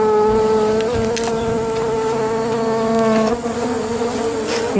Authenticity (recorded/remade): recorded